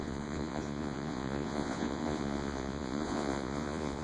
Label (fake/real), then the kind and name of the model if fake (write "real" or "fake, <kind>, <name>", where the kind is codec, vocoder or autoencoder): fake, vocoder, Vocos